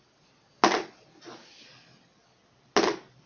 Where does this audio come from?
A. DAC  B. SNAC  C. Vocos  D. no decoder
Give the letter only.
D